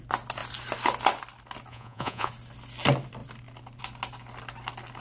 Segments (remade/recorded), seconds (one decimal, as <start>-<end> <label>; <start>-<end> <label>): 0.0-1.7 recorded; 1.7-2.3 remade; 2.3-5.0 recorded